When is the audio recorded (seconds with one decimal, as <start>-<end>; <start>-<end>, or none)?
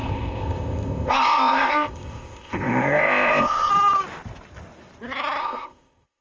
3.7-5.4